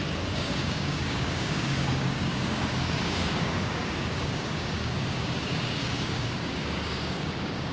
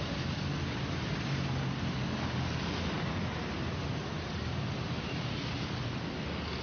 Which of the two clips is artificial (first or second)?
first